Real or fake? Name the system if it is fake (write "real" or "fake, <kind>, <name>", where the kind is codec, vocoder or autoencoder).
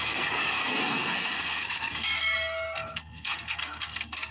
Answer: fake, codec, SNAC